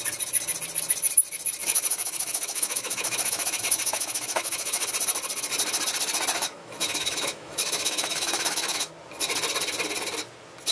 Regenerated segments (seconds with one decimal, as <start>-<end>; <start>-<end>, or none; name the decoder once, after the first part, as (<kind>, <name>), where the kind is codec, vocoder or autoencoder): 1.6-4.9 (autoencoder, DAC-VAE); 6.4-8.9